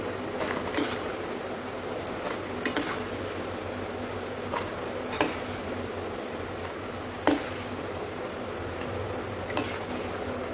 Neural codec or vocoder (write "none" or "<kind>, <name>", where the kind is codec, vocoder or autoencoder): none